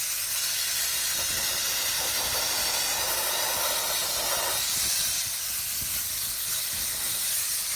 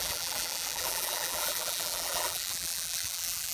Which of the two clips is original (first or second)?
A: first